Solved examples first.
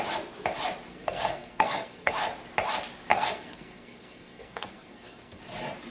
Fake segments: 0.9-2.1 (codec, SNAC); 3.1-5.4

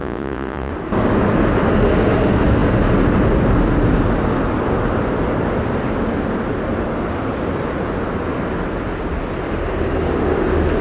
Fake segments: 0.0-0.7 (vocoder, Vocos)

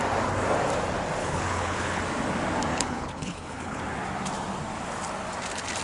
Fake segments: 1.2-2.0 (codec, HILCodec); 2.7-3.8

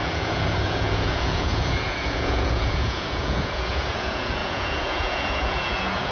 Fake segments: 0.0-6.1 (vocoder, Vocos)

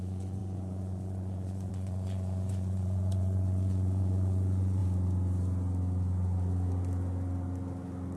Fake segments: 0.0-4.8 (vocoder, Vocos)

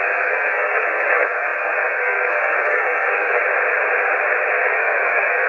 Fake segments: 0.0-3.4 (codec, SNAC); 4.5-5.5

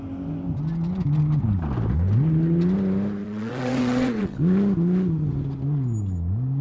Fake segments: 3.2-4.4 (vocoder, WaveNeXt)

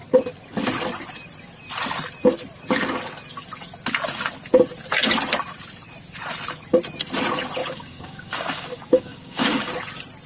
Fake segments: 7.6-9.7 (codec, DAC)